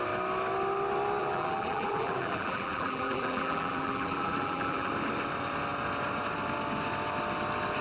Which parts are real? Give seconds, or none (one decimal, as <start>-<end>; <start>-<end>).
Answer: 0.0-1.2; 4.9-7.8

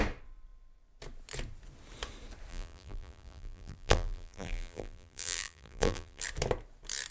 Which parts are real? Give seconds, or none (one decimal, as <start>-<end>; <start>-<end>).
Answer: 0.0-2.5; 6.2-7.1

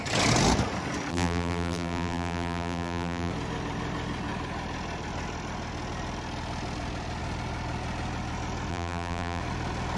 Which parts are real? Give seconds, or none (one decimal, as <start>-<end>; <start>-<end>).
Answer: 0.0-1.1; 3.3-8.7; 9.4-10.0

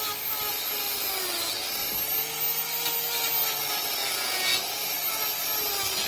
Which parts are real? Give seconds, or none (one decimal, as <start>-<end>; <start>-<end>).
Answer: 0.0-6.1

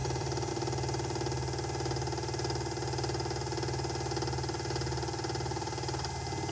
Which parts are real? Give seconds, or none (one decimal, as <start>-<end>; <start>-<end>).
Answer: 0.5-6.5

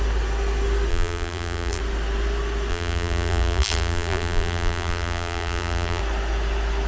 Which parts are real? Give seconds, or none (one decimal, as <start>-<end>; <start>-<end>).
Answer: 0.0-0.9; 1.8-2.7; 6.0-6.9

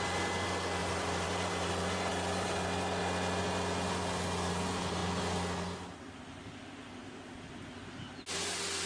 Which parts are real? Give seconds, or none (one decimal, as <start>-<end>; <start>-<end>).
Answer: 0.0-0.8; 1.7-7.0; 7.5-8.9

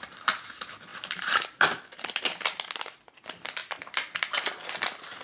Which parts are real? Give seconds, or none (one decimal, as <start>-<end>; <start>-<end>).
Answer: 0.0-0.9; 2.2-5.2